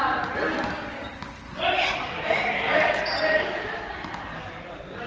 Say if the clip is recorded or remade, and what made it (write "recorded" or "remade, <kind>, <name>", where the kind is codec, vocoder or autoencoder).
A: recorded